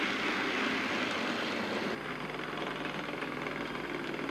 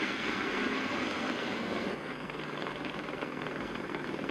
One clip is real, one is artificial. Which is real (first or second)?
first